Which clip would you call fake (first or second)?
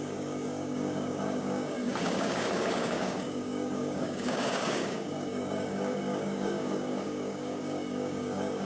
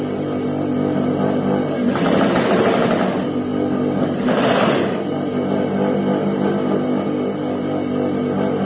first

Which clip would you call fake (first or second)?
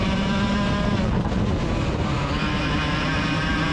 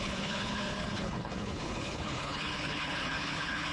second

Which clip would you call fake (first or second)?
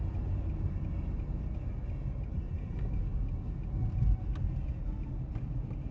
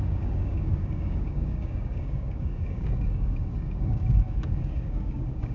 second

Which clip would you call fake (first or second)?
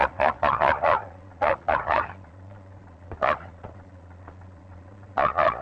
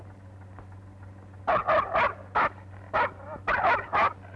first